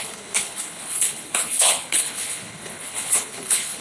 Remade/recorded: remade